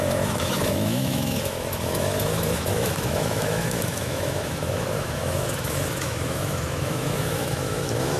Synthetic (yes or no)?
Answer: yes